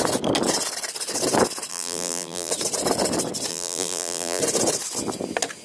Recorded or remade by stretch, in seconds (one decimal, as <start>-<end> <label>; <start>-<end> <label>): 0.0-1.7 recorded; 1.7-2.5 remade; 2.5-3.5 recorded; 3.5-4.4 remade; 4.4-5.6 recorded